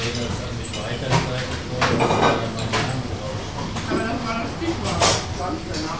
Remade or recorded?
recorded